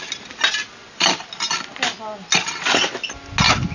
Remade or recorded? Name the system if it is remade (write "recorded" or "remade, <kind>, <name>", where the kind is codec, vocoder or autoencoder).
recorded